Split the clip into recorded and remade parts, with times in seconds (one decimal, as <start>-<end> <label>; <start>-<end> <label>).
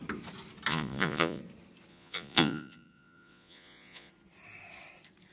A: 0.0-0.7 recorded; 0.7-1.4 remade; 1.4-1.9 recorded; 1.9-4.1 remade; 4.1-5.3 recorded